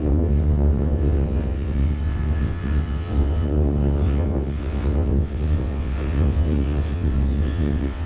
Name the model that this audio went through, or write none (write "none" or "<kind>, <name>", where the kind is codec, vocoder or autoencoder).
vocoder, WaveNeXt